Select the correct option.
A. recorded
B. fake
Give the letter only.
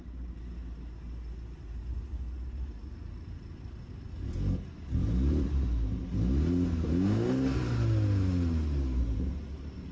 A